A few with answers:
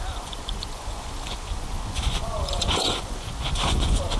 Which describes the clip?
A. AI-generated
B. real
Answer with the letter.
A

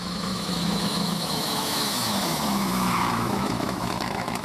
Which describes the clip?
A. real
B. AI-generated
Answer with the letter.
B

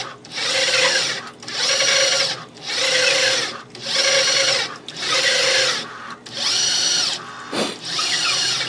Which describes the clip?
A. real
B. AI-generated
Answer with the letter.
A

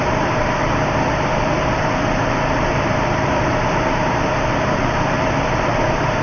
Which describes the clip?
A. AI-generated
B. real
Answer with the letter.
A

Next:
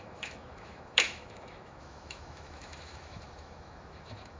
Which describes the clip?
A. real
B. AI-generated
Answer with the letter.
B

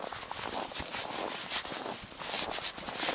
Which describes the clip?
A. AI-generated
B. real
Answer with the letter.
B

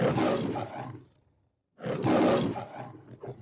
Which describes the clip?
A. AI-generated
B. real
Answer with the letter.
B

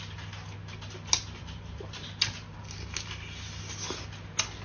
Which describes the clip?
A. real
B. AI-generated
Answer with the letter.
A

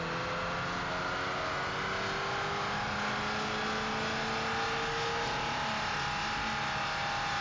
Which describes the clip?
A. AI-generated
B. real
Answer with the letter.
B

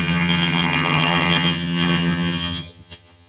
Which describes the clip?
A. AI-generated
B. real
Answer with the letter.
A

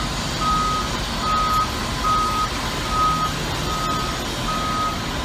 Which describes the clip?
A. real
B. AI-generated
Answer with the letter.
A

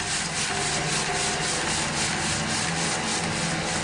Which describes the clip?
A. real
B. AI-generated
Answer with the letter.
A